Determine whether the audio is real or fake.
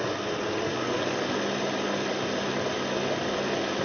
real